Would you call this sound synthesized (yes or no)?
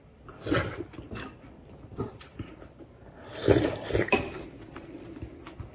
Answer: yes